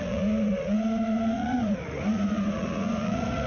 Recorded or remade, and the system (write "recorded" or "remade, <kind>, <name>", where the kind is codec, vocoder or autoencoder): remade, vocoder, Vocos